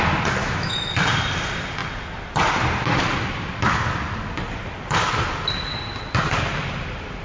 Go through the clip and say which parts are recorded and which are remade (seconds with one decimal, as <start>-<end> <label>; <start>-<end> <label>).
0.0-0.4 recorded; 0.4-0.9 remade; 0.9-7.2 recorded